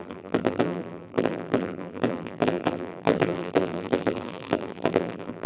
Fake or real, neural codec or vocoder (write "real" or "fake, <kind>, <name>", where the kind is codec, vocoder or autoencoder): fake, vocoder, BigVGAN v2